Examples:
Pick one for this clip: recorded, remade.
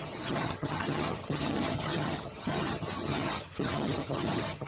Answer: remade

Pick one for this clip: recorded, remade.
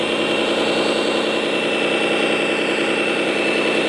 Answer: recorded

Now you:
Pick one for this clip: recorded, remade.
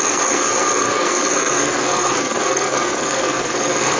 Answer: remade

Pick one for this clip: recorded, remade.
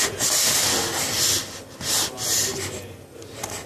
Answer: recorded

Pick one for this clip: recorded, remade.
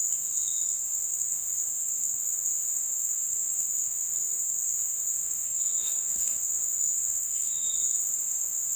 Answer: remade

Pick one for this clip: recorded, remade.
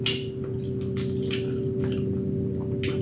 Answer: recorded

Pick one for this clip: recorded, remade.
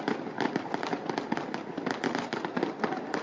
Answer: recorded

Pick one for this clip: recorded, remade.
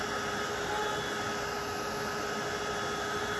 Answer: recorded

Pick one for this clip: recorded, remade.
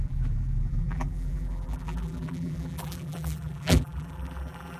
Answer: remade